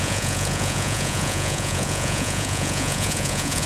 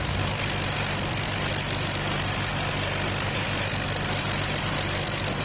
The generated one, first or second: first